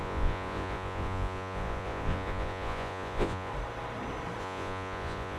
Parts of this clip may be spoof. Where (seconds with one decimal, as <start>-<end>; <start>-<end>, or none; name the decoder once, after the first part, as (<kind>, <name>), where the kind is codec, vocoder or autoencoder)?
0.0-3.5 (vocoder, Vocos); 4.4-5.4